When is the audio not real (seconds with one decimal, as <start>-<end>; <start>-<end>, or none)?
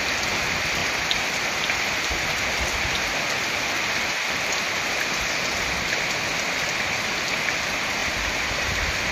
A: 0.8-1.6